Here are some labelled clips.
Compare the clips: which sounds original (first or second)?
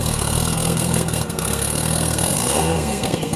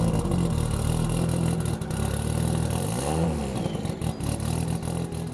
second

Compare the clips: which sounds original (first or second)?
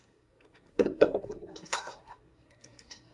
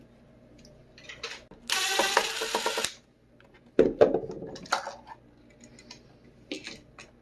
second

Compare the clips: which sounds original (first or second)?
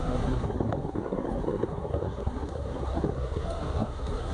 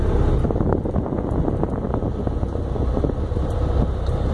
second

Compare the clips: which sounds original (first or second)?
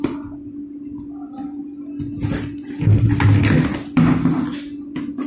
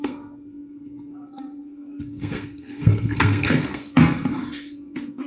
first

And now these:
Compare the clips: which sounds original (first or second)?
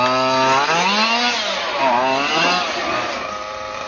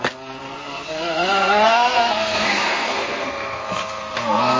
first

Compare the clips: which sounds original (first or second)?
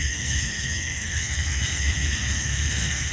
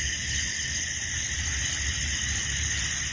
second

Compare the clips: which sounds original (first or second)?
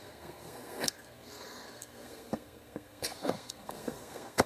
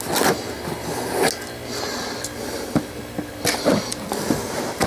second